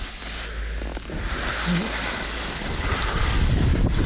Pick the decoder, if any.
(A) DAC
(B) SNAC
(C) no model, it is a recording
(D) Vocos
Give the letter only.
C